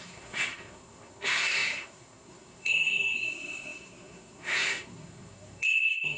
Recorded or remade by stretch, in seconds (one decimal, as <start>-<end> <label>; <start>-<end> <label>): 0.0-6.2 remade